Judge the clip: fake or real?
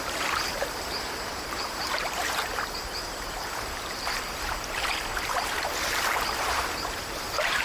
fake